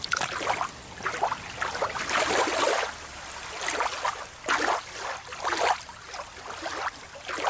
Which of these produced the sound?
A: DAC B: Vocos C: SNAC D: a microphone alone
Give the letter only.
D